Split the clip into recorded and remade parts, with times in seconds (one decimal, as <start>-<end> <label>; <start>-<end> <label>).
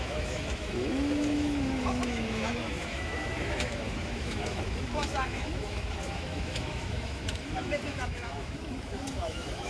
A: 0.0-9.7 remade